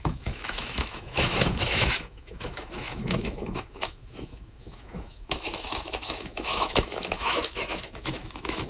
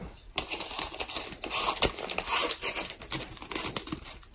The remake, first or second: first